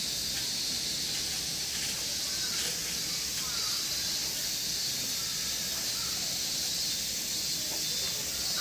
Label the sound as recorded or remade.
recorded